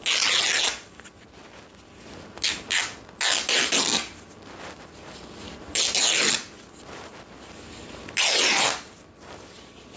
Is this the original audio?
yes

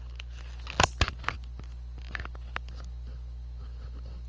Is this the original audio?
yes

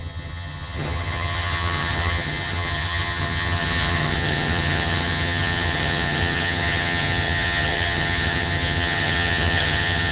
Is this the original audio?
no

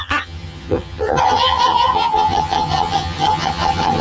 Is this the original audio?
no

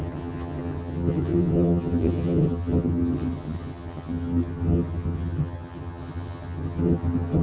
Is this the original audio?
no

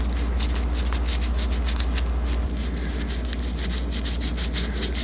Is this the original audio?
yes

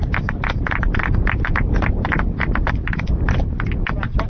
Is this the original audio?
yes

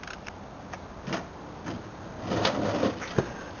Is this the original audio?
yes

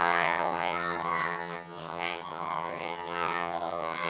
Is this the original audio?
no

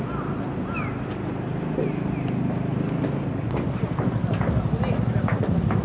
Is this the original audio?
yes